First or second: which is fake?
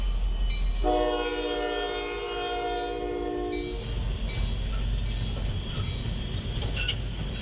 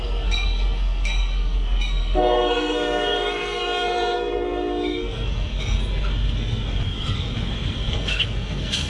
second